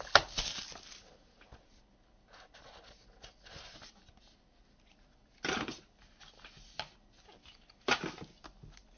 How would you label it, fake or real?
real